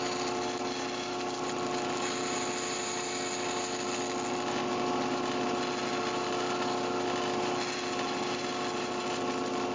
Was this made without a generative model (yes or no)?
yes